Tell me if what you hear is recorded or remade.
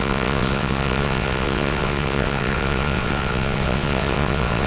remade